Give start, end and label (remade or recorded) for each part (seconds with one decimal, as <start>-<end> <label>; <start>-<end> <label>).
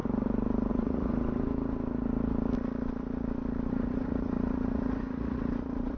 0.0-0.7 recorded; 0.7-1.1 remade; 1.1-3.7 recorded; 3.7-6.0 remade